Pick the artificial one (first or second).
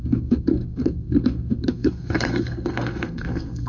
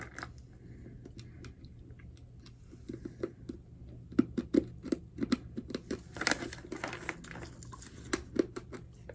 first